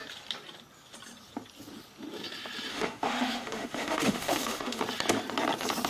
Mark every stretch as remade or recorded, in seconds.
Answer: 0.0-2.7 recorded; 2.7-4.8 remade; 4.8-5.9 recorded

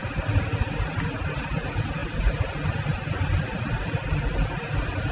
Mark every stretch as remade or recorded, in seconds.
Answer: 0.0-5.1 recorded

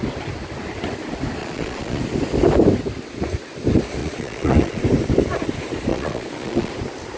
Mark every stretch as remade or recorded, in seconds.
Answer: 0.0-1.4 recorded; 1.4-2.0 remade; 2.0-4.0 recorded; 4.0-4.8 remade; 4.8-5.9 recorded; 5.9-6.7 remade; 6.7-7.2 recorded